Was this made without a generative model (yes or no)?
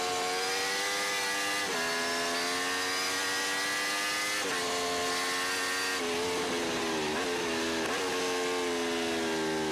yes